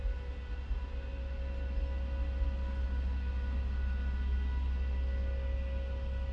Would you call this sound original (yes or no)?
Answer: yes